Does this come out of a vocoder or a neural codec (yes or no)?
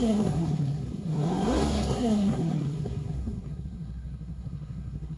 yes